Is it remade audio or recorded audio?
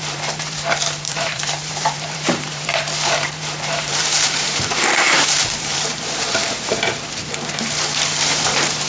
remade